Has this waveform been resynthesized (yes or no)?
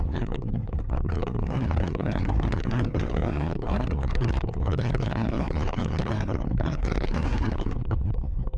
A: yes